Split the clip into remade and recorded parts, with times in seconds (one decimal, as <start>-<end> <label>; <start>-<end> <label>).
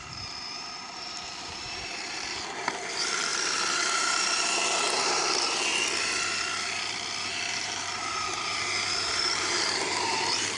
0.0-5.7 remade; 5.7-7.5 recorded; 7.5-10.6 remade